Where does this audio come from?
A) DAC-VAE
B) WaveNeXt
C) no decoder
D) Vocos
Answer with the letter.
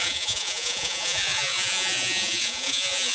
D